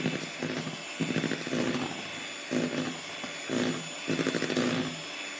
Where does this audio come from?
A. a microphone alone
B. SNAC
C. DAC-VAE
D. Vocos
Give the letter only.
A